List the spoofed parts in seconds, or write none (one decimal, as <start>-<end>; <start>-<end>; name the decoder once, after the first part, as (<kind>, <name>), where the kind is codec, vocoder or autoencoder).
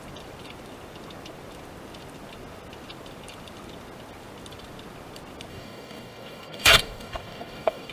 5.5-7.9 (codec, DAC)